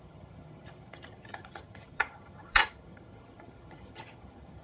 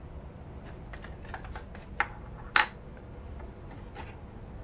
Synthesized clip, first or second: first